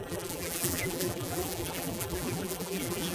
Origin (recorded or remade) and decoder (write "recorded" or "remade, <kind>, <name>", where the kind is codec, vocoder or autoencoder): remade, vocoder, BigVGAN v2